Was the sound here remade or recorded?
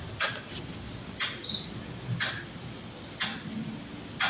recorded